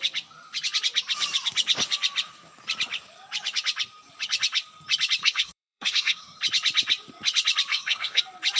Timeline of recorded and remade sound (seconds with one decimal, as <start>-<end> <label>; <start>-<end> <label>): 0.0-5.2 recorded; 5.2-6.4 remade; 6.4-7.7 recorded; 7.7-8.2 remade; 8.2-8.6 recorded